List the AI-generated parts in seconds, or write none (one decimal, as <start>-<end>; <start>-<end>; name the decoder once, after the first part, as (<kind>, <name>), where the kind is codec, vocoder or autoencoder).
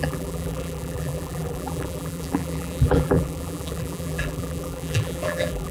0.0-5.7 (vocoder, BigVGAN v2)